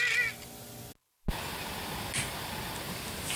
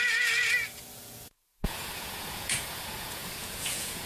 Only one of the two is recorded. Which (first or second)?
first